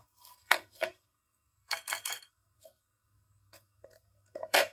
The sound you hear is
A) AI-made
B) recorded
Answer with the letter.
A